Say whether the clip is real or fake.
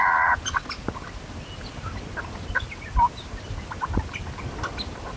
real